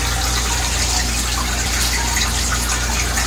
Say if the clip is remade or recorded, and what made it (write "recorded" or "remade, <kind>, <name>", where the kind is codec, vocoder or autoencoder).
recorded